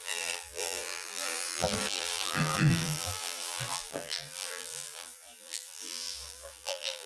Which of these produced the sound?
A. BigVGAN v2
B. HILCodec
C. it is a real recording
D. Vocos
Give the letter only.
A